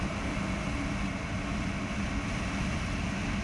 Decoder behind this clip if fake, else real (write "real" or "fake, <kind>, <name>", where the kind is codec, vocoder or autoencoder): real